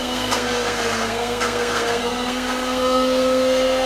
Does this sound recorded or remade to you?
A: remade